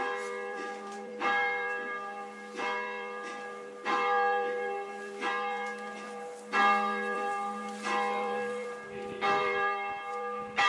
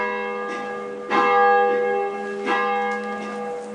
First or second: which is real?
second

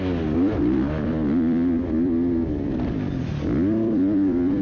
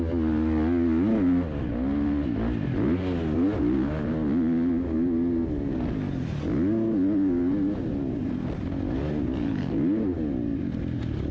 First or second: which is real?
second